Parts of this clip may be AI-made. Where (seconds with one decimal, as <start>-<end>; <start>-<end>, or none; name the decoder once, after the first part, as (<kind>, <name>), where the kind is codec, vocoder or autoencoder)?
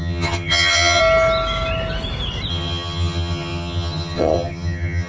0.0-1.0 (vocoder, HiFi-GAN); 2.5-5.1